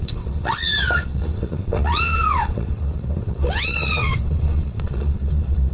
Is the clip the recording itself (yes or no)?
no